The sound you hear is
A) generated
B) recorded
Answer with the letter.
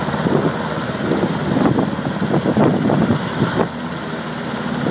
B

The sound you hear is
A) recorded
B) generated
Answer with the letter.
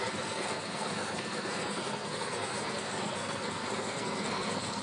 B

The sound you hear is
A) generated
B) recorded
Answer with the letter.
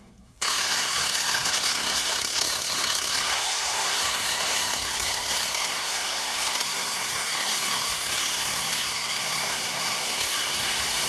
A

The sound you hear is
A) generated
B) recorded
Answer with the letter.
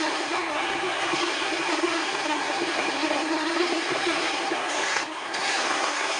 A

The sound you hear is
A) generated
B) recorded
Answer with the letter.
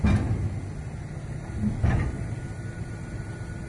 B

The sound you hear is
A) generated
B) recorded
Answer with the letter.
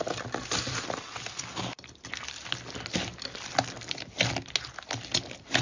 B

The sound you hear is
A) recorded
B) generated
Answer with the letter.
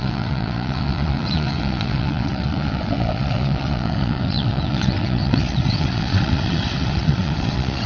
B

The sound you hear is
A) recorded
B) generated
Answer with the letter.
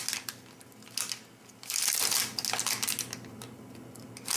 A